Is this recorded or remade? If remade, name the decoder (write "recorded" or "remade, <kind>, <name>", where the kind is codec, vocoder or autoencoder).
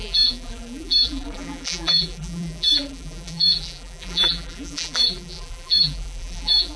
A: remade, vocoder, BigVGAN v2